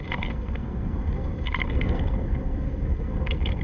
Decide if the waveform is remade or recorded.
remade